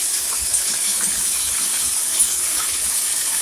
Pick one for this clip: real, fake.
fake